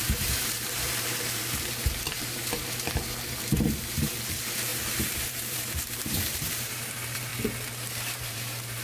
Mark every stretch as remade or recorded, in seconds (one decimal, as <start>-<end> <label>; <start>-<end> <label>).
0.0-7.3 remade; 7.3-7.9 recorded; 7.9-8.8 remade